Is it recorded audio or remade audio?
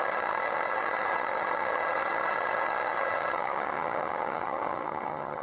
remade